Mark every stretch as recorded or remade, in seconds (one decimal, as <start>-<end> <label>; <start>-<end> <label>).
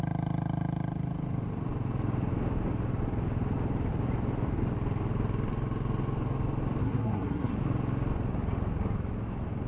0.0-6.8 recorded; 6.8-7.6 remade; 7.6-9.7 recorded